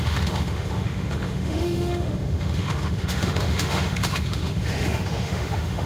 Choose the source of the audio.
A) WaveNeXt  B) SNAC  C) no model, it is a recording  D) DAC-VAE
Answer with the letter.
D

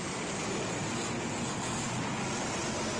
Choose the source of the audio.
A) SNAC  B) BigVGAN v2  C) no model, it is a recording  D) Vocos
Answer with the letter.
C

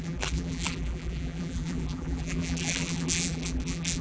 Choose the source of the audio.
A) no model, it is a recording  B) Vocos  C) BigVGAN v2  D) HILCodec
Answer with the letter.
C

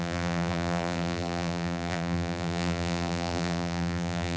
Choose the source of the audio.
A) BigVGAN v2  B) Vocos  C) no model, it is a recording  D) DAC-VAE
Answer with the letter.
A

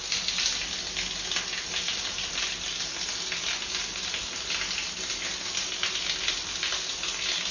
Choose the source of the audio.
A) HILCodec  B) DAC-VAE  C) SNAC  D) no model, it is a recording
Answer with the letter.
D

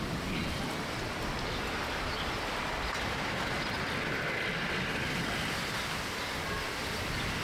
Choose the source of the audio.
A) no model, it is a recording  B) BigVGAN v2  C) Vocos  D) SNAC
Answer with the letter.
A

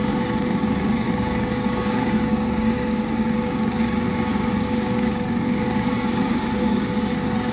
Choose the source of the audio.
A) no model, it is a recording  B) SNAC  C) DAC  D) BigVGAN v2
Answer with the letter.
C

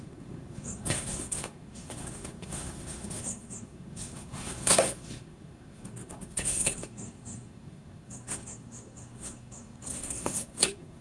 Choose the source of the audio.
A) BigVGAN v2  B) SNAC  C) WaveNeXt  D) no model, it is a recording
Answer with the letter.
B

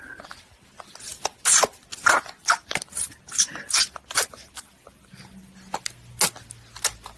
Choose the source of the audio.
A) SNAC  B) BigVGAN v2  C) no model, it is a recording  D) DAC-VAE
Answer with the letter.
C